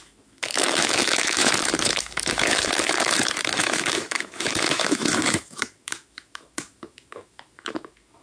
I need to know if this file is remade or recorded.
remade